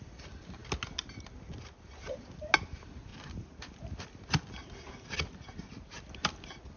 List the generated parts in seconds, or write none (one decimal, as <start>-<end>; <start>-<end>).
none